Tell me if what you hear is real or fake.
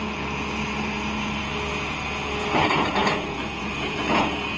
fake